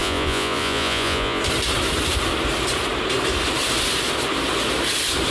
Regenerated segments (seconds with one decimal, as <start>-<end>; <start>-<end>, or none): 0.0-1.4